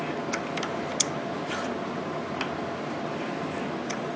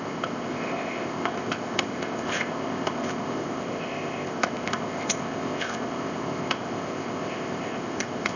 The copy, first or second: second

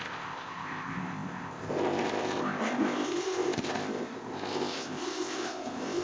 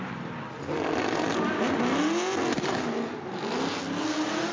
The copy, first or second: first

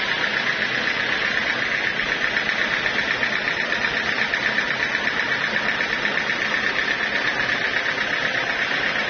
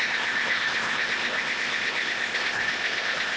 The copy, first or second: second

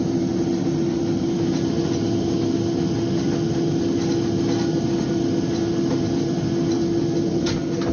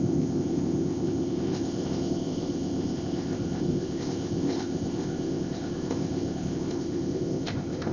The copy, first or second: second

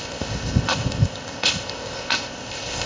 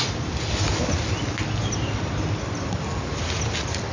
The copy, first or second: first